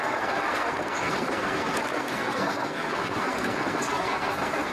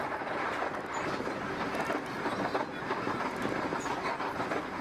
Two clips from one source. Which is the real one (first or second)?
second